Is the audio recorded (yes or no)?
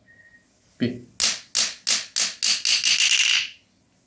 yes